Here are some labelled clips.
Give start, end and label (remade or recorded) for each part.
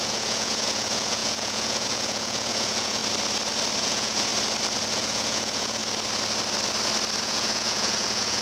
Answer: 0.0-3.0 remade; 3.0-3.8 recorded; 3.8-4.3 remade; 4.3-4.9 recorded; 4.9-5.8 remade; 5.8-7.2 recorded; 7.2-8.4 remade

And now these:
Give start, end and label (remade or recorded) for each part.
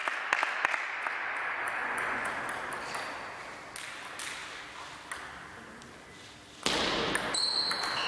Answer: 0.0-1.8 recorded; 1.8-2.3 remade; 2.3-8.1 recorded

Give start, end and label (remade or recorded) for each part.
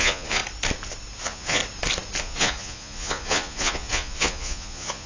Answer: 0.0-0.4 remade; 0.4-1.2 recorded; 1.2-1.6 remade; 1.6-2.2 recorded; 2.2-5.1 remade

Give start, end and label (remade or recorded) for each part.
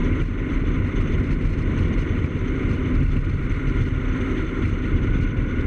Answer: 0.0-5.7 recorded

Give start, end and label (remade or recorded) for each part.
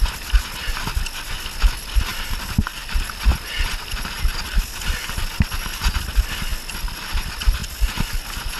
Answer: 0.0-8.6 recorded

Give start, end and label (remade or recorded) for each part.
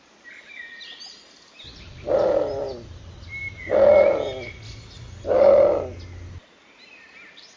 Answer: 0.0-7.6 recorded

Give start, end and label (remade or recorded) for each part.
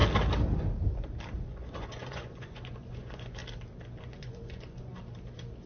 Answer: 0.0-1.4 recorded; 1.4-3.4 remade; 3.4-4.0 recorded; 4.0-4.9 remade; 4.9-5.7 recorded